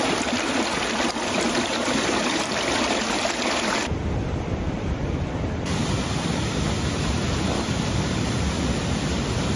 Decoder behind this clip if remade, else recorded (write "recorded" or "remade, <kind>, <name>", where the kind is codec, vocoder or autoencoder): remade, vocoder, BigVGAN v2